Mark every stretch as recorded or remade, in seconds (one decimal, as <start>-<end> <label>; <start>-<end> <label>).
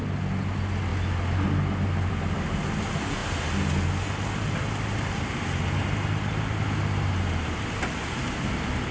0.0-8.9 recorded